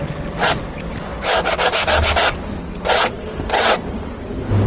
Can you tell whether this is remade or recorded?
recorded